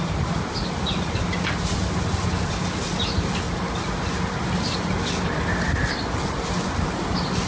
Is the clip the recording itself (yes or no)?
yes